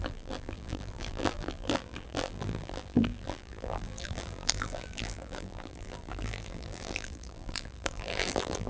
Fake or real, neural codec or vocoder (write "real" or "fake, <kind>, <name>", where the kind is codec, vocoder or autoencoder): fake, vocoder, BigVGAN v2